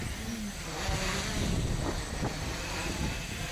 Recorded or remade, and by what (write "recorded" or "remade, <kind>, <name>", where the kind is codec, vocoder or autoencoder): recorded